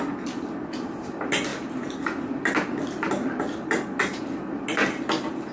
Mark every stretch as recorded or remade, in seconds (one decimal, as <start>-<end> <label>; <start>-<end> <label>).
0.0-5.5 recorded